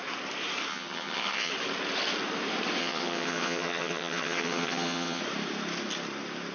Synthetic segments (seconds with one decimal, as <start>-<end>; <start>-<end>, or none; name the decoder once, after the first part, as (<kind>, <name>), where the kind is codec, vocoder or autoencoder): 0.7-1.5 (vocoder, HiFi-GAN); 2.8-5.2